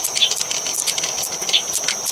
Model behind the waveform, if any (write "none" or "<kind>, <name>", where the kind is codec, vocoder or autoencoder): none